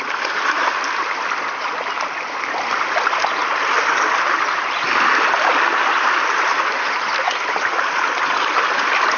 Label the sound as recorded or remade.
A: recorded